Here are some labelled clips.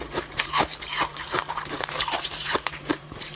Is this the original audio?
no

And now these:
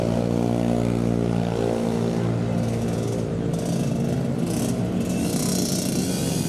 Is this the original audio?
yes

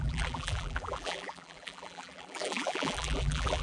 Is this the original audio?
no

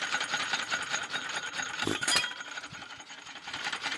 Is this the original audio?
no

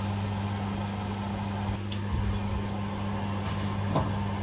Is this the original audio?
yes